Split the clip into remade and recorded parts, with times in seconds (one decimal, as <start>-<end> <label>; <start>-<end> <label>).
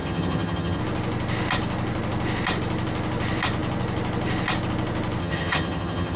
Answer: 0.0-0.8 remade; 0.8-5.2 recorded; 5.2-6.2 remade